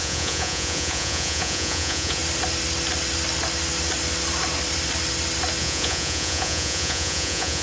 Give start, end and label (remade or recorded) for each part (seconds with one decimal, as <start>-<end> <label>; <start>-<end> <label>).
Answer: 0.0-2.2 remade; 2.2-5.6 recorded; 5.6-7.6 remade